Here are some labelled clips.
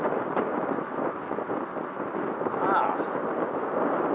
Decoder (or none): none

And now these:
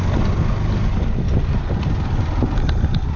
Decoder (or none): none